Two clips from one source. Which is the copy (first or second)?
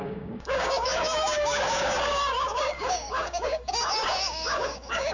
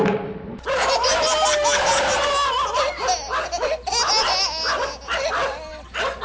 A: first